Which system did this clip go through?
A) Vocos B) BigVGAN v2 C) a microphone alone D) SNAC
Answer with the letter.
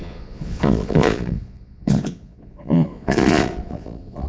A